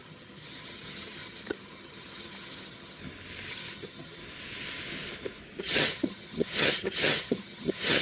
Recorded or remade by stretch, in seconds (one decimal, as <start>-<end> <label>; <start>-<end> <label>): 0.0-3.0 remade; 3.0-3.5 recorded; 3.5-4.2 remade; 4.2-5.6 recorded; 5.6-8.0 remade